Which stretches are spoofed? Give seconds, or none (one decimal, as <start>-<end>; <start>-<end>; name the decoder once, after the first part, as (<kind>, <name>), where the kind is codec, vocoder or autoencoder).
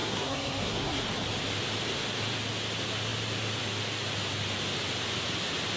0.0-1.0 (codec, SNAC)